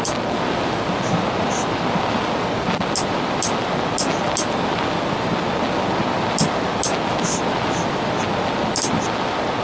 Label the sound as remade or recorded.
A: recorded